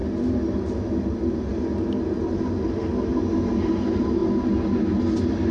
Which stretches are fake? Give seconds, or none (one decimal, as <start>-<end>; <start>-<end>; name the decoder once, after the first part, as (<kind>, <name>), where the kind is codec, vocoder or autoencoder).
none